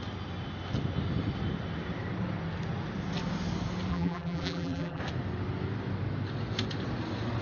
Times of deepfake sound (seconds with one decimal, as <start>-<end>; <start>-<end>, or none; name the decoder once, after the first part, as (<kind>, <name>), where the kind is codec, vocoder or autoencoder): 3.9-5.0 (vocoder, BigVGAN v2)